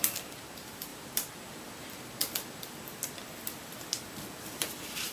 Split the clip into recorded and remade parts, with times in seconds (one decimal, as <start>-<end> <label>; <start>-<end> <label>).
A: 0.0-2.2 remade; 2.2-4.4 recorded; 4.4-5.1 remade